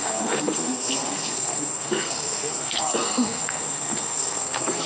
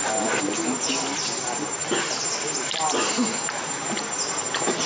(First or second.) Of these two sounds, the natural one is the second